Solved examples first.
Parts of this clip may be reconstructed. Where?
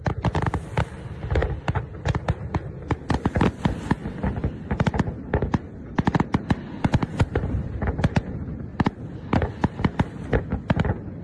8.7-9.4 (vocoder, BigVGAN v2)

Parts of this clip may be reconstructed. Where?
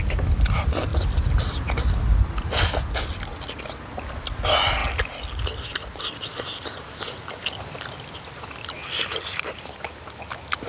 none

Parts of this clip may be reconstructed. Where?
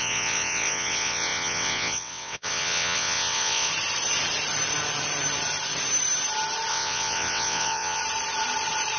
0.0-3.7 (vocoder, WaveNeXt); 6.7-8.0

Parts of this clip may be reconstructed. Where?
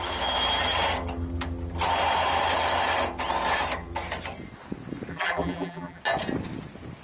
5.1-6.0 (vocoder, BigVGAN v2)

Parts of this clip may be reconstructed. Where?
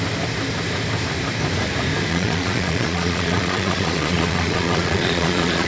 2.1-5.7 (vocoder, Vocos)